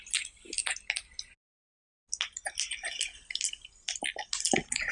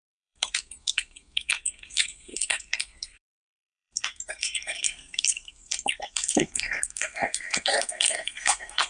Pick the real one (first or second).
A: first